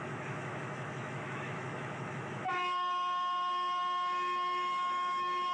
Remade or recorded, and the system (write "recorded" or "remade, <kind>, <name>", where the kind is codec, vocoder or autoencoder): remade, autoencoder, DAC-VAE